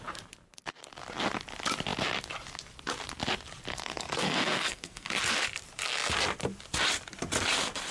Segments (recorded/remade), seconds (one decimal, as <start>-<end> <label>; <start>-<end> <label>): 0.0-3.7 recorded; 3.7-5.1 remade; 5.1-7.9 recorded